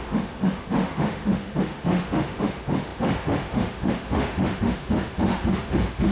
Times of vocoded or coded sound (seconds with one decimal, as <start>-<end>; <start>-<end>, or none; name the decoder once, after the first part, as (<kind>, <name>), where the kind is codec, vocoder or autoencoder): 0.0-6.1 (autoencoder, DAC-VAE)